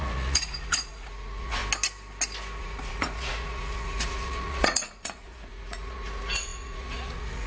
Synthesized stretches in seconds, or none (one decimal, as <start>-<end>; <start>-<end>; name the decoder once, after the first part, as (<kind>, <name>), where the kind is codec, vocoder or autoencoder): 0.0-1.6 (vocoder, Vocos); 2.6-7.5